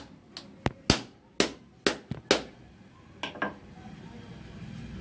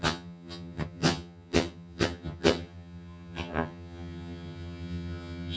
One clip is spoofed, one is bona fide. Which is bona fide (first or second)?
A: first